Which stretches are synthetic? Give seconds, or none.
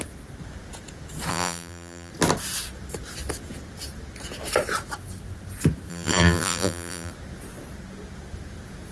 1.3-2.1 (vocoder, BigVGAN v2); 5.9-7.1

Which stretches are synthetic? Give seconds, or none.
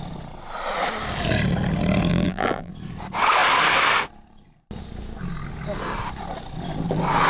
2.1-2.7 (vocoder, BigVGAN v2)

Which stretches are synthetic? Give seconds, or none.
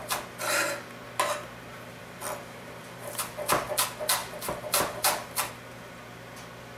1.7-3.7 (vocoder, BigVGAN v2); 4.2-5.5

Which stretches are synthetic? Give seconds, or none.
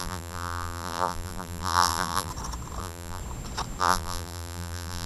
0.0-2.3 (vocoder, BigVGAN v2); 2.8-3.2; 3.8-5.1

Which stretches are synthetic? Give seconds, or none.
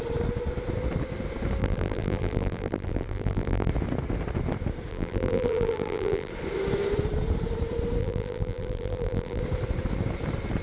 1.6-3.7 (vocoder, BigVGAN v2); 4.9-6.3; 8.0-9.4